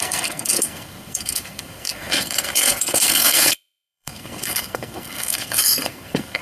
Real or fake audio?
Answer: fake